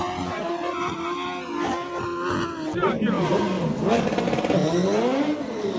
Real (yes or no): yes